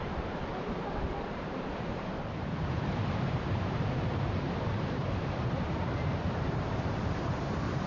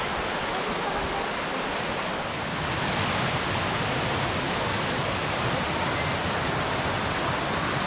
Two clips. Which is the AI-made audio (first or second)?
first